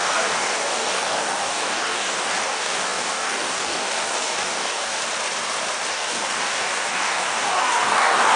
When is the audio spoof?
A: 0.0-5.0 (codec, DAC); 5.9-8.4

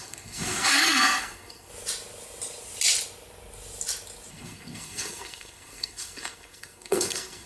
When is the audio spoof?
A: 0.0-1.7 (codec, SNAC); 4.3-7.5